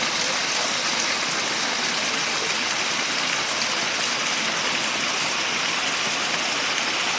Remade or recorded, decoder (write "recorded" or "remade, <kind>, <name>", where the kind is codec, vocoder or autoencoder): recorded